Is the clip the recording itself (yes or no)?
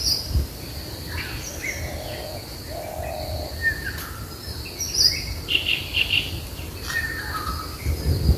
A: yes